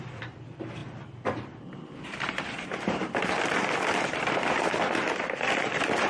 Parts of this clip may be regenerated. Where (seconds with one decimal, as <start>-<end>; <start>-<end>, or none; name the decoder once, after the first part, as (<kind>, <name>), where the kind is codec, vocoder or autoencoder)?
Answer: 0.0-0.8 (vocoder, BigVGAN v2); 1.6-3.0; 4.1-6.1